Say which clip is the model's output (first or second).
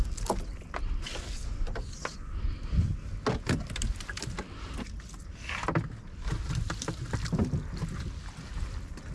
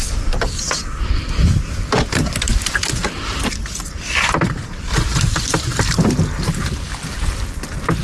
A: second